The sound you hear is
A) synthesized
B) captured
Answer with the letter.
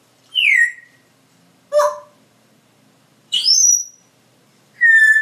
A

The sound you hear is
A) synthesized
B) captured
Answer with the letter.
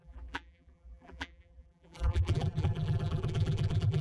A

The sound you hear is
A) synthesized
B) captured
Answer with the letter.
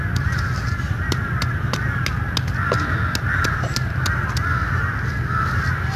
B